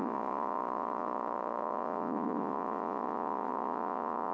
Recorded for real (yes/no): no